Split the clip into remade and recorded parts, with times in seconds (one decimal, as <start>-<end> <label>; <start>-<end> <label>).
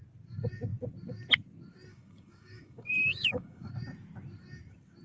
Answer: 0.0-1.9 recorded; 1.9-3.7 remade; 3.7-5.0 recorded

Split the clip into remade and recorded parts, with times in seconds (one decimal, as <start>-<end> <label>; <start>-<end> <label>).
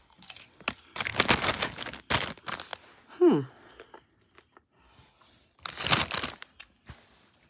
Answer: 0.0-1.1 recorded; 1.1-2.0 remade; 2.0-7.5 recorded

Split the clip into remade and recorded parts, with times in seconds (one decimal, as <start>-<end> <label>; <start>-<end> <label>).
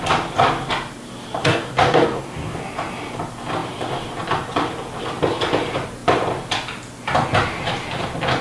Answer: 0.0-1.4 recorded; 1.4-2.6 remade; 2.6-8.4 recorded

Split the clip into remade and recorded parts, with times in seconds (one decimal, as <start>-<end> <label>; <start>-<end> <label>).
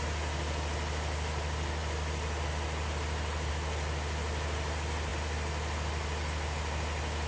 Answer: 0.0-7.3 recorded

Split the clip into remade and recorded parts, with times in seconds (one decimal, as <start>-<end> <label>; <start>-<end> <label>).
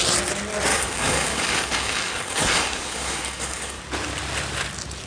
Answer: 0.0-0.7 recorded; 0.7-3.8 remade; 3.8-5.1 recorded